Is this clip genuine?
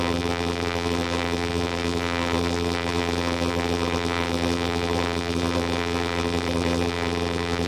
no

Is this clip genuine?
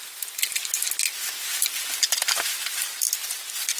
yes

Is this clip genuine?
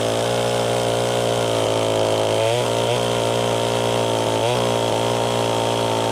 yes